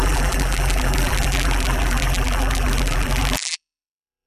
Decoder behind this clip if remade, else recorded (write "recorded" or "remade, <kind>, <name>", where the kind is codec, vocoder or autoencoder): remade, vocoder, BigVGAN v2